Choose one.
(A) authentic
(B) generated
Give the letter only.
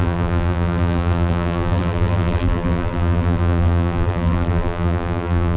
B